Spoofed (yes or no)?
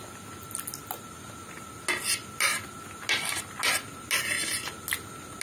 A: no